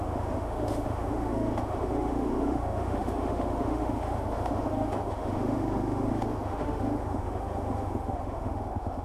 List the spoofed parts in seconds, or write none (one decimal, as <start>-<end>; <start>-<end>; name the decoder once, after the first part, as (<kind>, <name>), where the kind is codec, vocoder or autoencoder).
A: 0.0-9.0 (autoencoder, DAC-VAE)